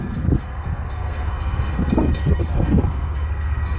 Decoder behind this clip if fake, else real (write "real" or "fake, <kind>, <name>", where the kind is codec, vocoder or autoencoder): fake, codec, SNAC